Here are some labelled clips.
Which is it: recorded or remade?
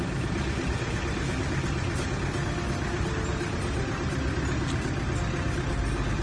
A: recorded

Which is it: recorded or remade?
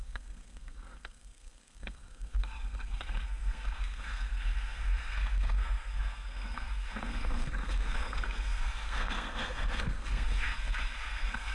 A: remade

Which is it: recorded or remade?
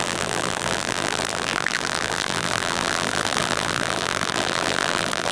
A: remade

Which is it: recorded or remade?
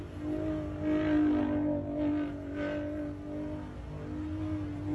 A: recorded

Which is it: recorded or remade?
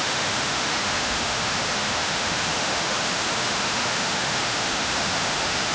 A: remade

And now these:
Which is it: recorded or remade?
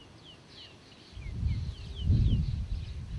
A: recorded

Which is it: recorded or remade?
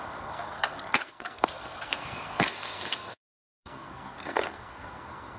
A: remade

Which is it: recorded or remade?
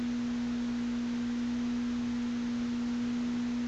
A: recorded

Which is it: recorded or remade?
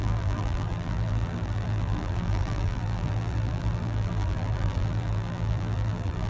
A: remade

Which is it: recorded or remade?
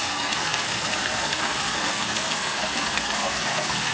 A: remade